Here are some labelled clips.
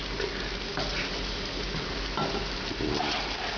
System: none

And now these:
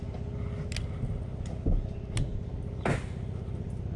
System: none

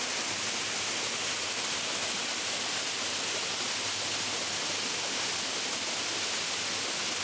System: none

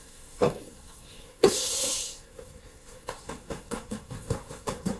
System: codec, SNAC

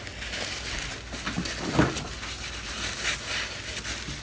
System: none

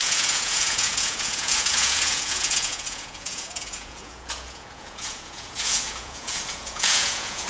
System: vocoder, Vocos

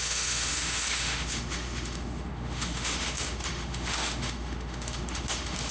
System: autoencoder, DAC-VAE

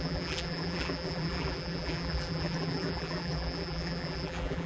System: vocoder, BigVGAN v2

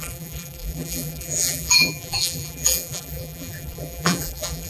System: vocoder, BigVGAN v2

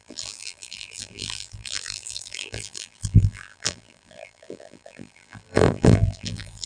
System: vocoder, BigVGAN v2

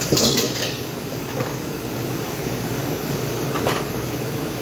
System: codec, DAC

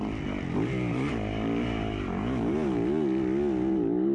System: none